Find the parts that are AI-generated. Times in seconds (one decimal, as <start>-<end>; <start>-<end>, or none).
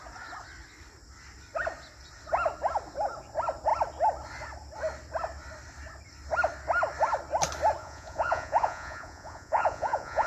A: 7.8-10.3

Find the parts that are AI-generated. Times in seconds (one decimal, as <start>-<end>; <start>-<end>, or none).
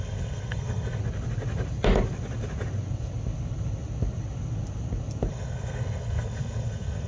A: 0.0-1.0; 5.3-7.1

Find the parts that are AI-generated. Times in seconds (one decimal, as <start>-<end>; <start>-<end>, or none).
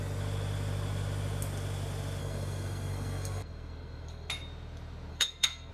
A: 2.2-4.3; 5.1-5.7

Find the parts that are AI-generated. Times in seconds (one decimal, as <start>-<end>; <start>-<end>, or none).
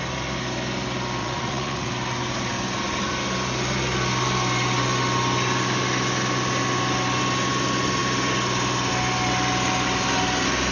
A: 1.2-1.9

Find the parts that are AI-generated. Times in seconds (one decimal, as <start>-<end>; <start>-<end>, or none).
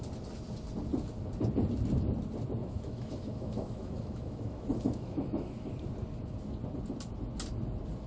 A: 2.6-5.7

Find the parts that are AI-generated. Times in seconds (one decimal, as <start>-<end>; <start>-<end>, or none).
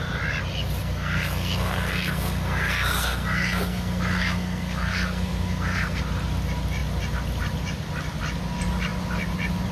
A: 0.8-6.0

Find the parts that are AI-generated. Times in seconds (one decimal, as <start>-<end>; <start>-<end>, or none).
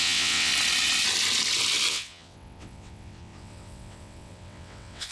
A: 0.0-0.5; 1.9-5.1